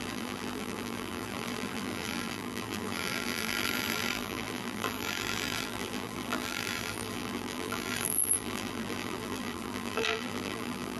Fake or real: fake